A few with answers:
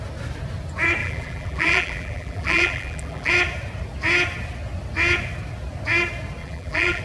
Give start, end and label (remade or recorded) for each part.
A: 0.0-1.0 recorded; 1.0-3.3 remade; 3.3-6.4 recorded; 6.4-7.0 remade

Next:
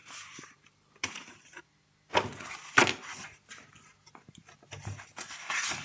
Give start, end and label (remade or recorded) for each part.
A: 0.0-1.6 remade; 1.6-5.8 recorded